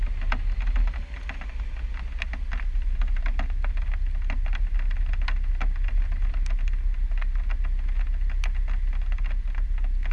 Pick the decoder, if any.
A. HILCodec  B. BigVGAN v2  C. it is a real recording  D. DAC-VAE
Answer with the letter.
C